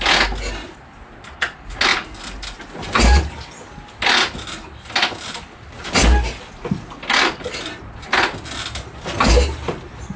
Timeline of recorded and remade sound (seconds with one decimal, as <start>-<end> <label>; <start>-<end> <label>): 0.0-10.2 recorded